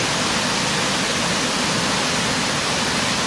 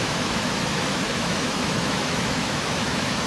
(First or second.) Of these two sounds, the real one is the first